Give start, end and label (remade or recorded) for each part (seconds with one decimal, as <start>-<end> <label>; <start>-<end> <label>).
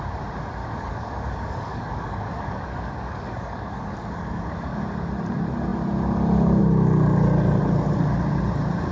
0.0-0.6 recorded; 0.6-4.8 remade; 4.8-8.9 recorded